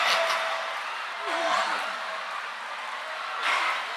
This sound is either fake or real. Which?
real